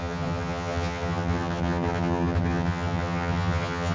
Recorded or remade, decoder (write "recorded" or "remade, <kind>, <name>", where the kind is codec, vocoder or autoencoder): remade, vocoder, HiFi-GAN